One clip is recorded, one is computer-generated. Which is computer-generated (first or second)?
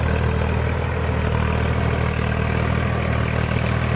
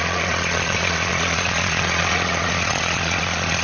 second